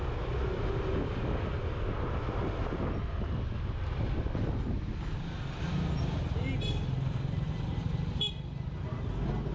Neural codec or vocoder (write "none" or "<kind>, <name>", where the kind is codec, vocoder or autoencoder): none